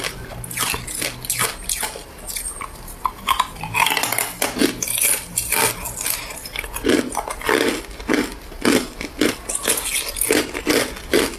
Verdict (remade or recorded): recorded